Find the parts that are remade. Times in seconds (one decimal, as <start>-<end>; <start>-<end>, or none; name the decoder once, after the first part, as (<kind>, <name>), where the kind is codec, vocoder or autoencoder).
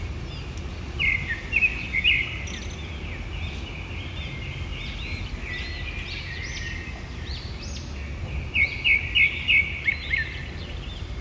none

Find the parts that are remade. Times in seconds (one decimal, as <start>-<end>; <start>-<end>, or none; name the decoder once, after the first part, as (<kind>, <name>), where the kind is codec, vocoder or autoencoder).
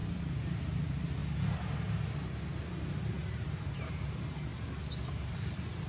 0.0-1.2 (vocoder, BigVGAN v2); 3.0-4.5; 5.1-5.9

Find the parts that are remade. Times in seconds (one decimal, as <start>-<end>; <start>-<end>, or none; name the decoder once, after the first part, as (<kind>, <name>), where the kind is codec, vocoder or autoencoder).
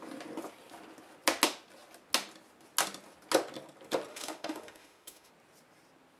4.1-5.3 (autoencoder, DAC-VAE)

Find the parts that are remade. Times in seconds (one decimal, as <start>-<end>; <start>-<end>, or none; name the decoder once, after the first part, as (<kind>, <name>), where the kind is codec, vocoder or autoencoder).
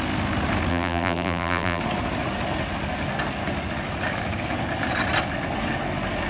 0.7-1.8 (vocoder, BigVGAN v2)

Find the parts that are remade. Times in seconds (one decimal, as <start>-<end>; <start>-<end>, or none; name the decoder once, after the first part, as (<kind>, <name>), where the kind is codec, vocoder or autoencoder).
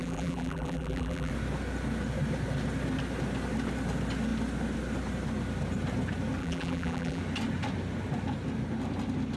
0.0-1.3 (vocoder, BigVGAN v2); 6.4-7.2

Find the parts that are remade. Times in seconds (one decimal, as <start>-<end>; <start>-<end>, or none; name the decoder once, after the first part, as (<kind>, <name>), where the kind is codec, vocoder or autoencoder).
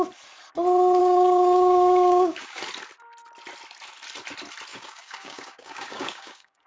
1.0-2.6 (codec, DAC); 4.7-6.7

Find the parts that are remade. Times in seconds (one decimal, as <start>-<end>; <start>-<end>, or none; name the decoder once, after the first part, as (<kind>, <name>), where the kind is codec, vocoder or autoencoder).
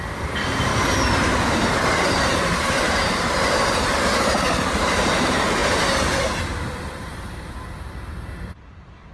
0.0-0.7 (vocoder, BigVGAN v2); 1.4-9.1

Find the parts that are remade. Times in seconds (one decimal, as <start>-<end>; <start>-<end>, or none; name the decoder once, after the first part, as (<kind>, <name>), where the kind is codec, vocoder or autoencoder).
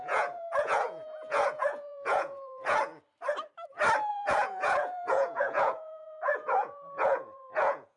0.0-2.9 (vocoder, Vocos); 4.1-8.0